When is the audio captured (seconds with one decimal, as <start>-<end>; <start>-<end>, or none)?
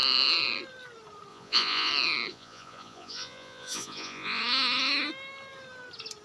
0.0-1.3; 1.9-2.3; 4.4-6.2